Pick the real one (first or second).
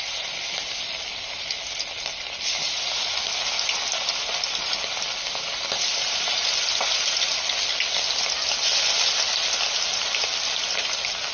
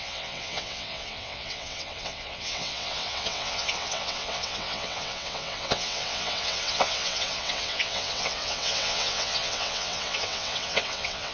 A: first